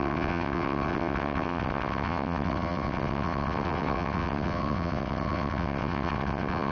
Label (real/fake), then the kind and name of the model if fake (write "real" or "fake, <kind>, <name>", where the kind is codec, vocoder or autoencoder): fake, vocoder, WaveNeXt